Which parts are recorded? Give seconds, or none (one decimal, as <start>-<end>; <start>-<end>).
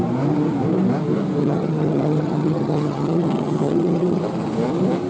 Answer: 0.0-1.4; 4.2-5.1